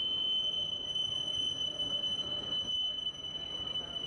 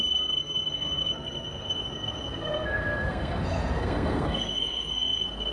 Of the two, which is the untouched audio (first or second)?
first